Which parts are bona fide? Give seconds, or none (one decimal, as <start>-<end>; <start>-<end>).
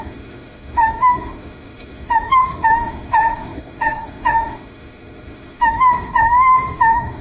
none